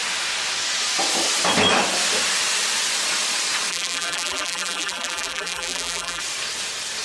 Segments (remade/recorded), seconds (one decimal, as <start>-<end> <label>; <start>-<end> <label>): 0.0-3.7 recorded; 3.7-6.2 remade; 6.2-7.0 recorded